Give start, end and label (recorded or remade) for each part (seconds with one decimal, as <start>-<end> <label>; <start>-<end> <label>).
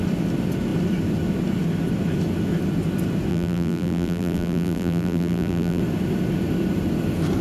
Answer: 0.0-3.3 recorded; 3.3-5.8 remade; 5.8-7.4 recorded